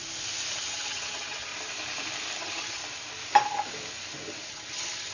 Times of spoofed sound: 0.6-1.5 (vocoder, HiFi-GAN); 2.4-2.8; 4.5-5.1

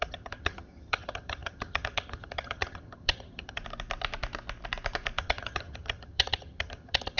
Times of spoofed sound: 0.0-3.6 (vocoder, HiFi-GAN); 5.2-7.2